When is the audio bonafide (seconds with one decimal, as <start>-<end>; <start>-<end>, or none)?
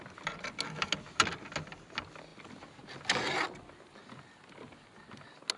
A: 0.0-5.6